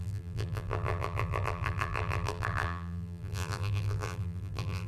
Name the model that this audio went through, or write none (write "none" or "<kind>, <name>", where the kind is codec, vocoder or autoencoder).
vocoder, BigVGAN v2